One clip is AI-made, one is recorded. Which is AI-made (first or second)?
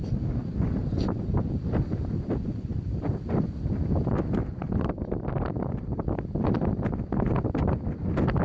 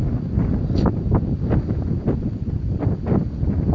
first